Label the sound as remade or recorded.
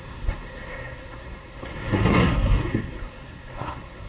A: remade